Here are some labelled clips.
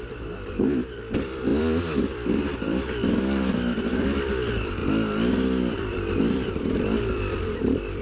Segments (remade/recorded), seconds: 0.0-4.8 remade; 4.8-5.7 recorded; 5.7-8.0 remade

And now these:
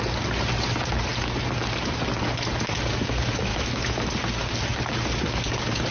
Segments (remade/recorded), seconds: 0.0-3.5 recorded; 3.5-4.1 remade; 4.1-5.9 recorded

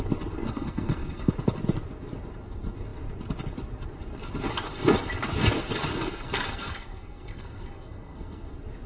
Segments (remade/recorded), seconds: 0.0-0.4 recorded; 0.4-1.3 remade; 1.3-5.9 recorded; 5.9-8.5 remade; 8.5-8.9 recorded